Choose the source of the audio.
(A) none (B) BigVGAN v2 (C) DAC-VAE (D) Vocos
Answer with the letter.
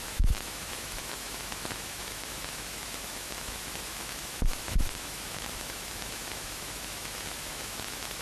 C